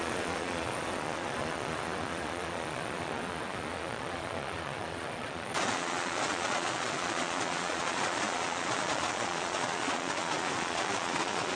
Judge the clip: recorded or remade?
remade